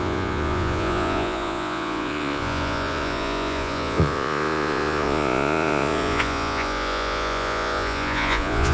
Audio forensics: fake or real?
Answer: fake